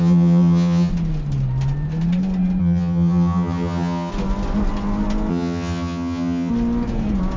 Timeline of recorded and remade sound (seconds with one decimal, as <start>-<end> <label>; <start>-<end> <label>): 0.0-0.9 remade; 0.9-2.6 recorded; 2.6-4.1 remade; 4.1-5.3 recorded; 5.3-6.5 remade; 6.5-7.4 recorded